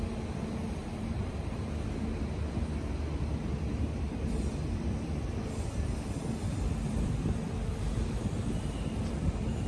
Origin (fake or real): fake